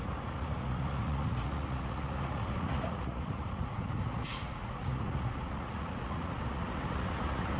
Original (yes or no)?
no